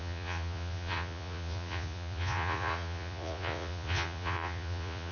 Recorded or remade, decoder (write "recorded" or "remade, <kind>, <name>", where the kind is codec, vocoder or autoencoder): remade, vocoder, Vocos